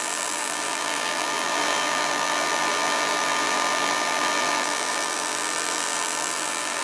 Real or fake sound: fake